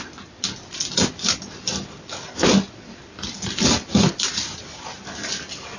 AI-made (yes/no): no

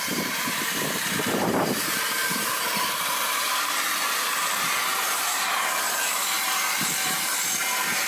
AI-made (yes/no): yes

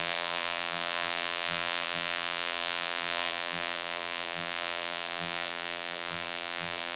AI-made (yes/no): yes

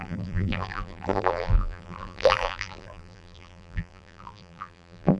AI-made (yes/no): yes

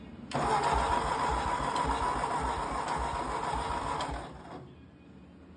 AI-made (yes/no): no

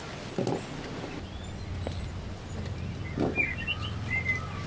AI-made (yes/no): no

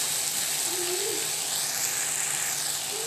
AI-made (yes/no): no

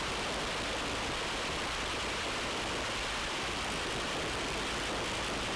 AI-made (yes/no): no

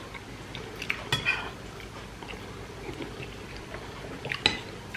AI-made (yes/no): no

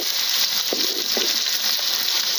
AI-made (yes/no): yes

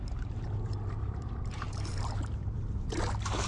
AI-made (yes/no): yes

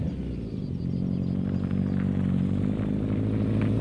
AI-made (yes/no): no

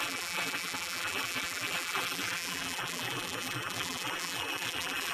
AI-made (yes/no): yes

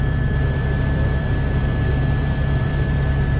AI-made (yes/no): yes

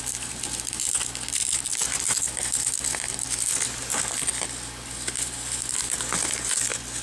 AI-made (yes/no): no